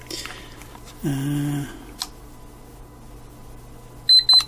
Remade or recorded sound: recorded